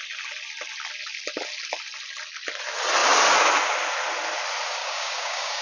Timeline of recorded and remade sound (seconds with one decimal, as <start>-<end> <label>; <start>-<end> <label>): 0.0-4.8 recorded; 4.8-5.6 remade